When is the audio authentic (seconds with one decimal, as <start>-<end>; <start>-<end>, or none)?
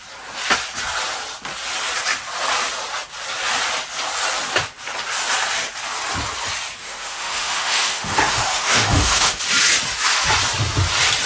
0.0-6.8; 9.4-11.3